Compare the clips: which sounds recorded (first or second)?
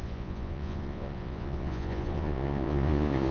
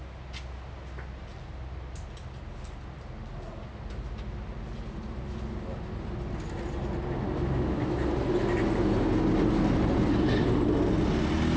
second